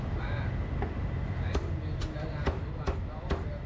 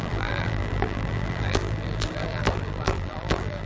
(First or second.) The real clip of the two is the first